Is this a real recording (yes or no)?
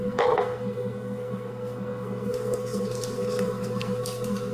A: no